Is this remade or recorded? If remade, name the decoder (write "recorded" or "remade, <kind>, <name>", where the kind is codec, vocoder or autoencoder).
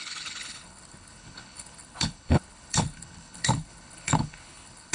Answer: remade, codec, HILCodec